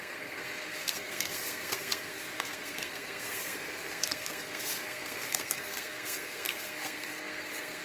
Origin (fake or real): fake